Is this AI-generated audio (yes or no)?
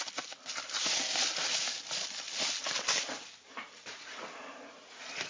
no